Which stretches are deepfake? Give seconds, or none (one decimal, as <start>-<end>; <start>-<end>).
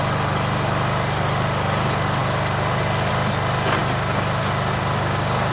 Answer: 2.2-3.1